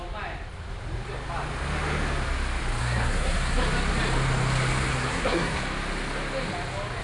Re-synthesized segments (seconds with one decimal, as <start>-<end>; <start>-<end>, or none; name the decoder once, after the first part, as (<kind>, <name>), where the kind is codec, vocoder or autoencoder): 2.8-3.6 (codec, SNAC); 4.9-5.6